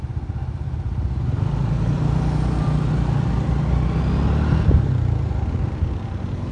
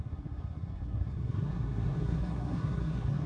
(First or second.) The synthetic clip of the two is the second